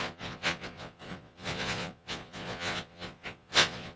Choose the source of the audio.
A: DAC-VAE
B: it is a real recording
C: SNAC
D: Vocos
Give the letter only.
D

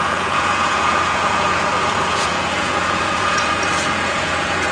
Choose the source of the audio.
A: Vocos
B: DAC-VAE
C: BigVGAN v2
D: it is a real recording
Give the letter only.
A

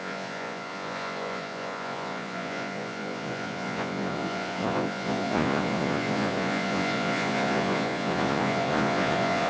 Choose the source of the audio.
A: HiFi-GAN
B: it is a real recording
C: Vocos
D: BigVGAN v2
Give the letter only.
C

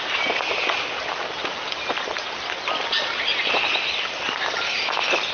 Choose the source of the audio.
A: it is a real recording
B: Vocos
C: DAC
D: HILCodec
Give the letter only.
A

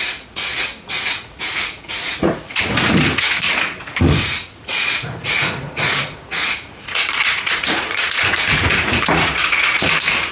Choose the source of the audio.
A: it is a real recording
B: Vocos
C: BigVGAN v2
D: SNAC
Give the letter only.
B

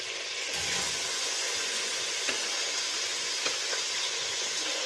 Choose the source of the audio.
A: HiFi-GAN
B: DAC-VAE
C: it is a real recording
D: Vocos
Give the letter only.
D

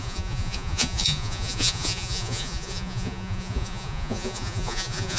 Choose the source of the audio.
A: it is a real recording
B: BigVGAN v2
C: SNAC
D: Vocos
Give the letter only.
D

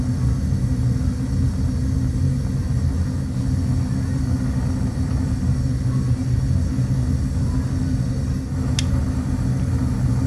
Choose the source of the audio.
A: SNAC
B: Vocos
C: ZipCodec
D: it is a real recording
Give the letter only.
D